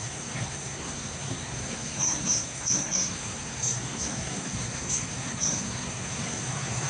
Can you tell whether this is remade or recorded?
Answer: remade